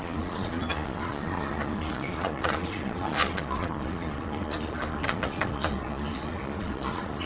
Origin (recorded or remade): remade